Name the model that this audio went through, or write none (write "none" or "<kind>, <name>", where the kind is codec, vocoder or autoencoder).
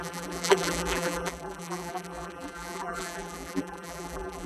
vocoder, BigVGAN v2